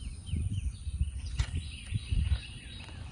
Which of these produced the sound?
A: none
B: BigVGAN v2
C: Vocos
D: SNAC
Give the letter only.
C